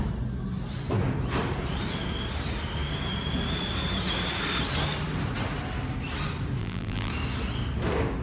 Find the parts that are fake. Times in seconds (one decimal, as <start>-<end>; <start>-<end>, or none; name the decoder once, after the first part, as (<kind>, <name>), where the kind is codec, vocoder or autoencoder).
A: 6.6-7.1 (vocoder, BigVGAN v2)